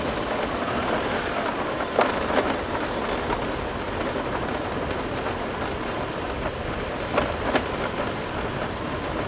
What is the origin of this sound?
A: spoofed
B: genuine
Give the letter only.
B